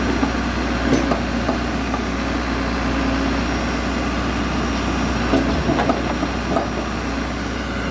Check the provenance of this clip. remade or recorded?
recorded